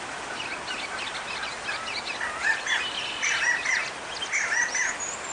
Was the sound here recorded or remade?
recorded